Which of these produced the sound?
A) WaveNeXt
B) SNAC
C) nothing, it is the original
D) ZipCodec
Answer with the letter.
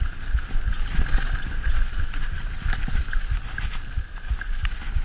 C